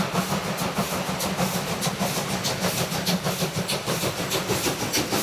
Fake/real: real